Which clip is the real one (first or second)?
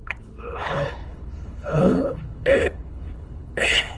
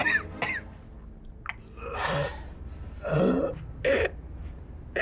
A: second